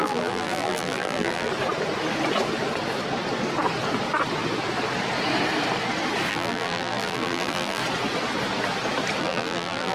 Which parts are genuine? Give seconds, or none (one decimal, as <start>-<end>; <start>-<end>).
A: 1.5-6.3; 7.8-9.2